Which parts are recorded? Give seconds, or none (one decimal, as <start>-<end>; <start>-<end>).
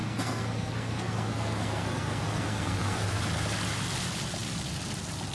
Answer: 3.2-5.3